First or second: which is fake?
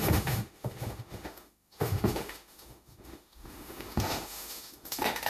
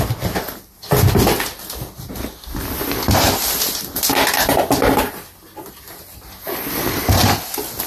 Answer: first